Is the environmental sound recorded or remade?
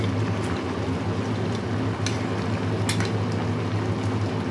recorded